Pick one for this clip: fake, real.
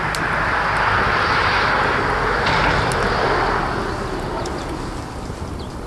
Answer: real